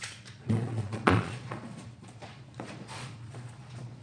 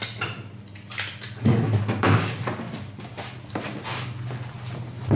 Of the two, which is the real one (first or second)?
second